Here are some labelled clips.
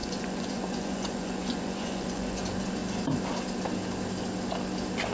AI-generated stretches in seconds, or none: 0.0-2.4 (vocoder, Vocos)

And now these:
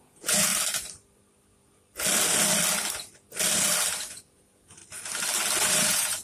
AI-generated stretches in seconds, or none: 0.0-0.5 (vocoder, Vocos); 4.0-4.8; 5.7-6.2